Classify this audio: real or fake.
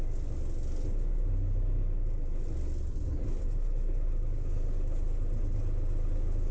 real